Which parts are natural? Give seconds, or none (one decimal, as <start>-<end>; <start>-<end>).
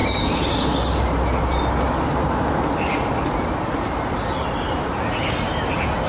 0.0-6.1